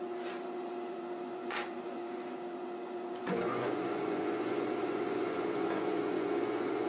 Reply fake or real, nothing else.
fake